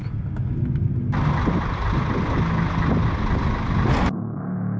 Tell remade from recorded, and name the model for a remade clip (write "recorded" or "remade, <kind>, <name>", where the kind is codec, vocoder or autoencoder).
recorded